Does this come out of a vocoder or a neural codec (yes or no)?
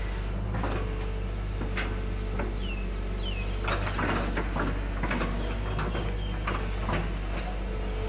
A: no